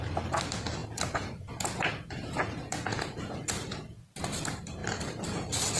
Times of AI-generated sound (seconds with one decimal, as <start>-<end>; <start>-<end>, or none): 0.8-4.2